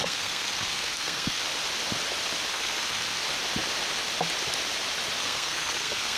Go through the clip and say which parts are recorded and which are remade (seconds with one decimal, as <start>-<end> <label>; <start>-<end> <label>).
0.0-1.4 remade; 1.4-2.5 recorded; 2.5-3.2 remade; 3.2-5.2 recorded; 5.2-6.2 remade